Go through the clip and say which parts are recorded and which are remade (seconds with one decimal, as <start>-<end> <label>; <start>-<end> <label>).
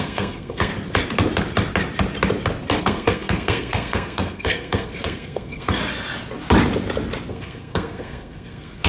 0.0-0.7 remade; 0.7-2.8 recorded; 2.8-5.8 remade; 5.8-7.3 recorded; 7.3-8.9 remade